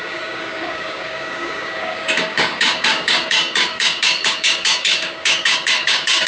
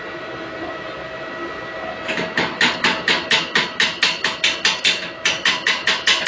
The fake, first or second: first